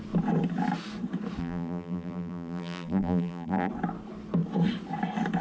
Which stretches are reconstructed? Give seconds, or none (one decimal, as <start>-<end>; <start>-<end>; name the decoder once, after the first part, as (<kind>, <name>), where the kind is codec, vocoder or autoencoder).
1.4-3.7 (vocoder, BigVGAN v2)